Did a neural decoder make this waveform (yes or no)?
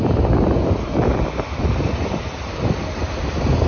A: no